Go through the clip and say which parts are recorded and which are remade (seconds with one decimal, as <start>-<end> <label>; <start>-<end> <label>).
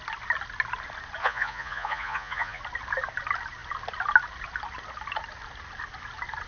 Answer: 0.0-1.2 recorded; 1.2-2.6 remade; 2.6-6.5 recorded